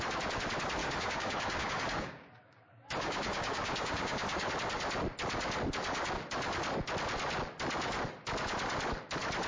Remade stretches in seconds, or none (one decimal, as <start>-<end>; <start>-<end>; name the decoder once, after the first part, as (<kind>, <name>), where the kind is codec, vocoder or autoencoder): 0.8-4.5 (codec, DAC)